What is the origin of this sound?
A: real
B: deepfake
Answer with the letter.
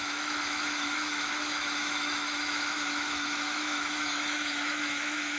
B